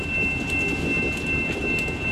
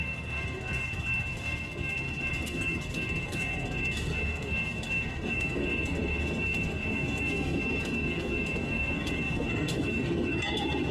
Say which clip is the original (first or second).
first